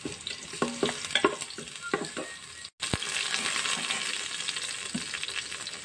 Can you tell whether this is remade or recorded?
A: recorded